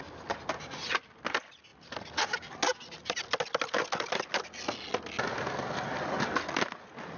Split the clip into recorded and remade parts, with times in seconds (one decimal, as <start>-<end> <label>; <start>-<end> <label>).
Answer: 0.0-7.2 recorded